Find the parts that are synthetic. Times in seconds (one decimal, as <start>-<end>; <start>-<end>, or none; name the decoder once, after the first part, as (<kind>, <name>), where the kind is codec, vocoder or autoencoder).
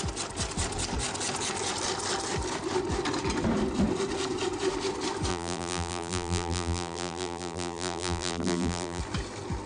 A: 5.3-9.0 (vocoder, BigVGAN v2)